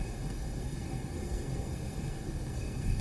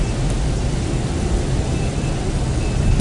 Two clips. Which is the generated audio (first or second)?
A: first